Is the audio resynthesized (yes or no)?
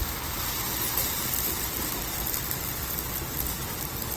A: no